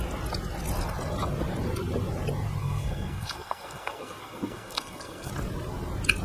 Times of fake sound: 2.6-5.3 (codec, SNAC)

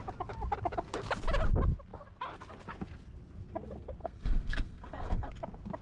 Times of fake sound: 4.0-5.3 (codec, SNAC)

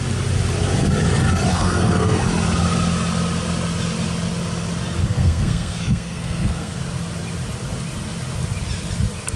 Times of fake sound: 1.5-2.2 (codec, SNAC); 5.0-6.8

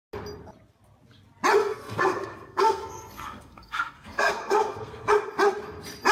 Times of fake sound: 1.6-5.1 (codec, SNAC)

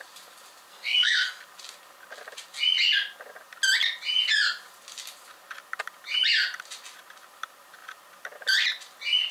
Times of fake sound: 0.7-1.4 (codec, SNAC)

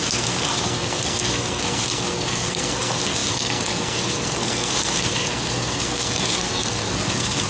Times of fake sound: 0.0-7.5 (codec, SNAC)

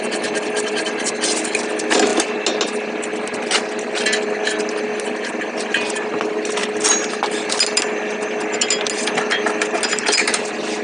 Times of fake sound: none